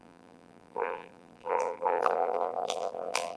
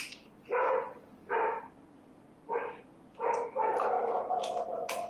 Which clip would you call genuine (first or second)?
second